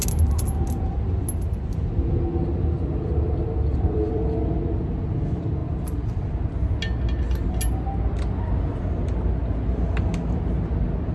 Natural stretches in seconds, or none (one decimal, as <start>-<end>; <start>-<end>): 0.0-3.7; 4.4-5.6; 6.2-11.1